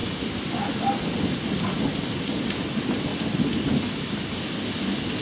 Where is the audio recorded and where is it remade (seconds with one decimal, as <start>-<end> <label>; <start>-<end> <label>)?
0.0-5.2 recorded